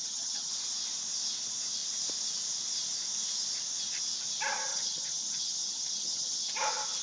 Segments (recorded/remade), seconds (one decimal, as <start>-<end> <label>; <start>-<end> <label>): 0.0-0.5 remade; 0.5-4.7 recorded; 4.7-6.5 remade; 6.5-7.0 recorded